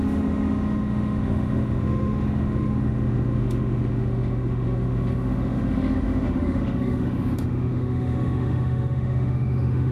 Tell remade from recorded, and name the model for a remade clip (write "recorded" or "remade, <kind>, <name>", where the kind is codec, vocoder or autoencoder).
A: remade, autoencoder, DAC-VAE